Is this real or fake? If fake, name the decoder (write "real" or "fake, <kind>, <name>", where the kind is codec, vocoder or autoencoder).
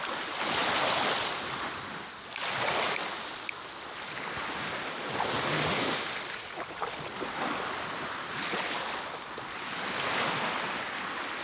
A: real